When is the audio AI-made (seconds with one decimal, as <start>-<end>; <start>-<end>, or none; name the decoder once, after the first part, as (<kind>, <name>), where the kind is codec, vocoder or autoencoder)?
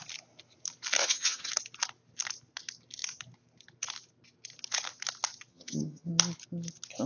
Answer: 1.0-1.5 (vocoder, HiFi-GAN); 5.5-6.1